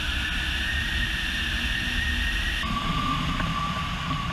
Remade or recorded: recorded